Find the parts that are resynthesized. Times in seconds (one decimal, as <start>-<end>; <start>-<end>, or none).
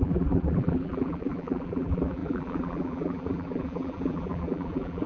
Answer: 0.0-5.1